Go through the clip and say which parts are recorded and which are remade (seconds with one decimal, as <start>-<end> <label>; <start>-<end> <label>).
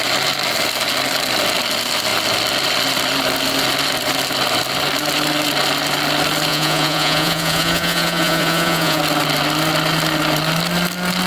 0.0-6.5 recorded; 6.5-9.0 remade; 9.0-11.3 recorded